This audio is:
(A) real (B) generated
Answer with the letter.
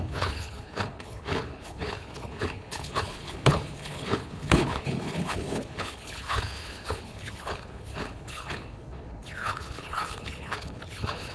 B